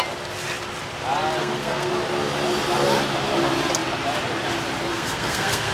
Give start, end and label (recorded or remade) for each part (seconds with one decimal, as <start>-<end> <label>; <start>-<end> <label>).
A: 0.0-1.4 recorded; 1.4-1.9 remade; 1.9-4.9 recorded; 4.9-5.7 remade